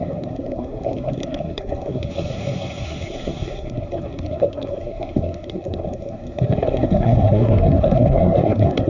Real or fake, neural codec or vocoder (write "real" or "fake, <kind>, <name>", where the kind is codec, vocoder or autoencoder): fake, codec, SNAC